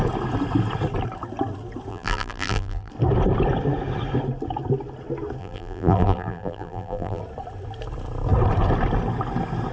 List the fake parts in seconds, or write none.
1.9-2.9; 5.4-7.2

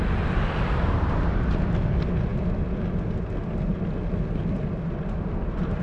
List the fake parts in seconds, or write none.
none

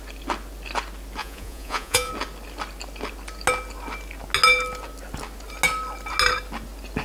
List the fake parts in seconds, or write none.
1.2-2.1

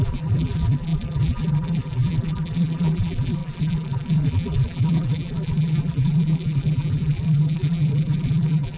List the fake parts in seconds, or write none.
0.0-8.8

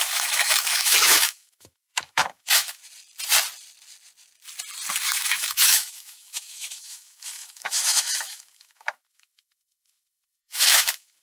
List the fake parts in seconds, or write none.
0.0-2.8; 5.0-11.2